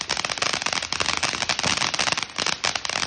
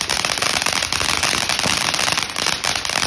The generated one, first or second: second